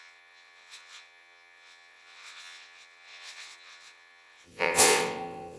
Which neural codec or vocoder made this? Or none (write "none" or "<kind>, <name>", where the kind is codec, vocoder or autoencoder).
vocoder, WaveNeXt